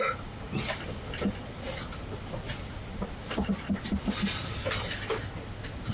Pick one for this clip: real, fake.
real